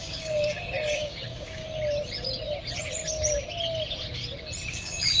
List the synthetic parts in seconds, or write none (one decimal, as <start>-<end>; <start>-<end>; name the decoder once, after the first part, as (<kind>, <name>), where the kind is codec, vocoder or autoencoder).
0.0-1.6 (codec, DAC); 4.7-5.2